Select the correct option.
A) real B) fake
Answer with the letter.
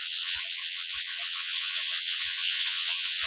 B